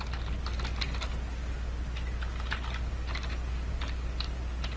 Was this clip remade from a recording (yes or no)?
no